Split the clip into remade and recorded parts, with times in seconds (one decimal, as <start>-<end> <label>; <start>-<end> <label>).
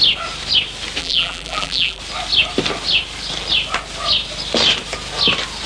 0.0-1.0 recorded; 1.0-2.0 remade; 2.0-5.7 recorded